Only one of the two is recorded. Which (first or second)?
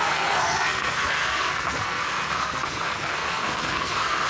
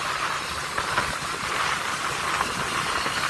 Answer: second